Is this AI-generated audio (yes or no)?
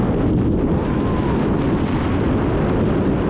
no